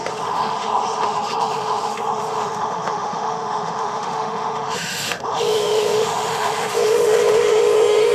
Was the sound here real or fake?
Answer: fake